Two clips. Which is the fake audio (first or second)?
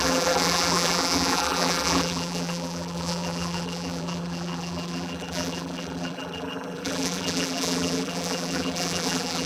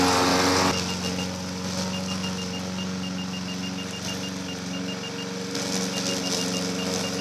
first